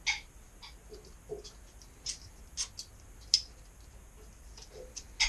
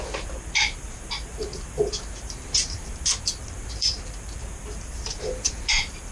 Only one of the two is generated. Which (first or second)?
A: second